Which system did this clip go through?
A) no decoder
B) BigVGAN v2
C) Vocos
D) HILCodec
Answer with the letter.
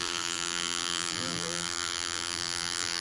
B